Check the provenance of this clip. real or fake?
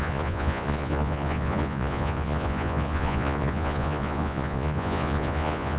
fake